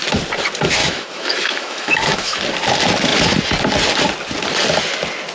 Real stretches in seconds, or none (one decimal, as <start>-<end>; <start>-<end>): 0.0-0.8; 2.4-5.3